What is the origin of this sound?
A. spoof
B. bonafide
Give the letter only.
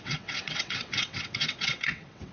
A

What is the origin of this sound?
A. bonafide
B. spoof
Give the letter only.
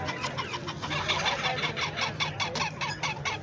A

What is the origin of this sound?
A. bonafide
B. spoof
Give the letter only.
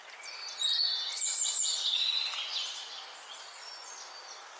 A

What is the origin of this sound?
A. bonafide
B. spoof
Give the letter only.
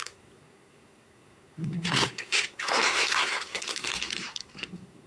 B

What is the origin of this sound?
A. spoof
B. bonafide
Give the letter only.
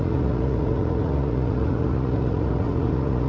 A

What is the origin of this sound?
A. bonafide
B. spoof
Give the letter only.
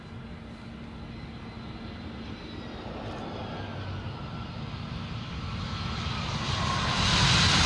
A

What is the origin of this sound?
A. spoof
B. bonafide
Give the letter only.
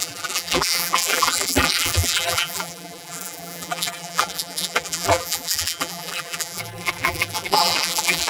A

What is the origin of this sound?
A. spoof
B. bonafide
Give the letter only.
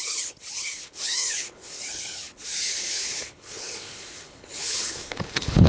A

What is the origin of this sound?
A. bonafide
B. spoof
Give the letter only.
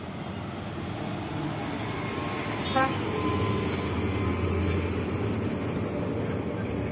A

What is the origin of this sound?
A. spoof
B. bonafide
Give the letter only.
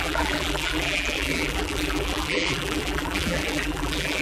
A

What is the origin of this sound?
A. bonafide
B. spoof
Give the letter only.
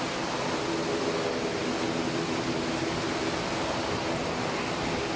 A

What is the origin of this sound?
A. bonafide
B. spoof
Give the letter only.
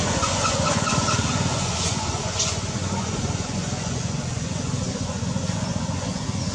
B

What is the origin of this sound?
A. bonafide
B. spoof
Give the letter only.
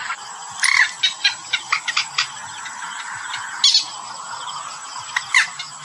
A